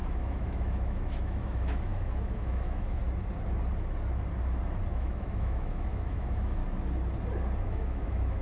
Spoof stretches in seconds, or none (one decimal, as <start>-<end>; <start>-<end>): 0.0-3.0; 4.9-6.6; 7.6-8.4